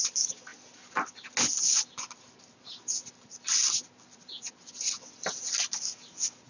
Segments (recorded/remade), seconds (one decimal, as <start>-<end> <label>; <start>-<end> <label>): 0.0-6.5 recorded